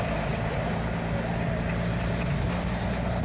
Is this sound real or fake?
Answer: real